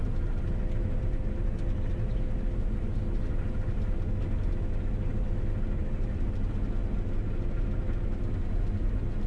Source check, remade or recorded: recorded